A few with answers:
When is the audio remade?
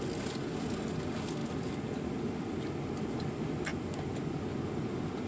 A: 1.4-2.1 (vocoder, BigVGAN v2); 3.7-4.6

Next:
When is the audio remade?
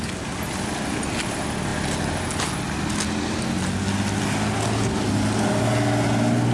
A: none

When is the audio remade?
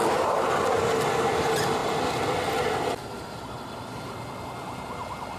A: 0.0-1.8 (vocoder, BigVGAN v2); 2.6-5.4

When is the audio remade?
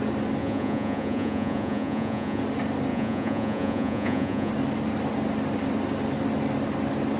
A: 0.4-2.4 (vocoder, Vocos); 2.9-4.5